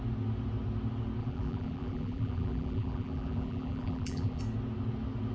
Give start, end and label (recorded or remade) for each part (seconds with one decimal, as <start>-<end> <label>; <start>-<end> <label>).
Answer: 0.0-1.2 recorded; 1.2-4.4 remade; 4.4-5.3 recorded